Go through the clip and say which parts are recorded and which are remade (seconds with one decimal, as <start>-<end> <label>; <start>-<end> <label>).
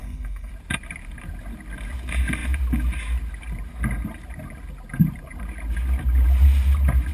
0.0-0.5 remade; 0.5-7.1 recorded